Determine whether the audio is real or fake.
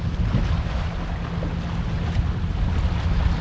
real